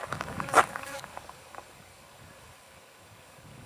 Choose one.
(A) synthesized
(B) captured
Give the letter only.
A